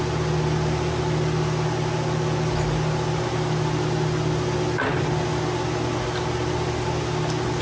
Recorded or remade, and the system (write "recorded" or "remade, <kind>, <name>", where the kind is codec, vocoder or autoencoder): recorded